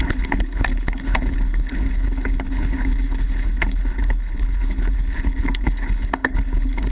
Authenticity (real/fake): fake